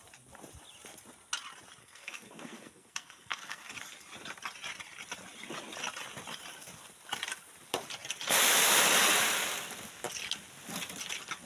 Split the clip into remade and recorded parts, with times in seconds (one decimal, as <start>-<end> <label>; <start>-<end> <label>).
0.0-1.8 recorded; 1.8-3.7 remade; 3.7-11.5 recorded